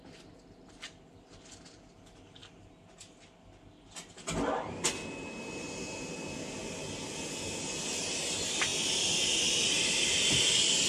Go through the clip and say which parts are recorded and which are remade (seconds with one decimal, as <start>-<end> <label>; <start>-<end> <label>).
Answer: 0.0-10.9 recorded